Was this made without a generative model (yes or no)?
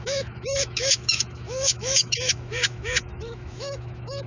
no